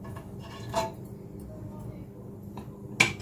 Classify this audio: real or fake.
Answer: real